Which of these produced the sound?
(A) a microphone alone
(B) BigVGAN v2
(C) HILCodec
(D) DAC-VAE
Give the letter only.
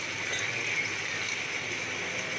A